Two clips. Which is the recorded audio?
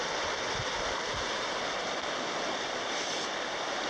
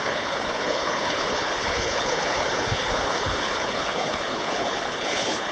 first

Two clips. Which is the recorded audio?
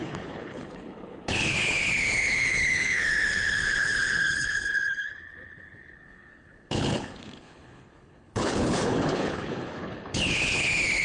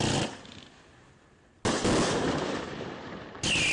second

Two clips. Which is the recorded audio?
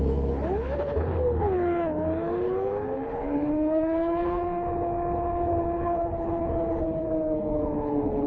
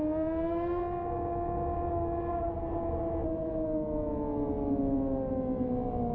second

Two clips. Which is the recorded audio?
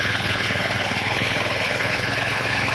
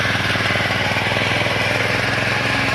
second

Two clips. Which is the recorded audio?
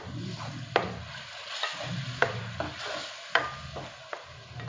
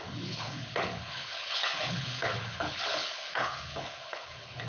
first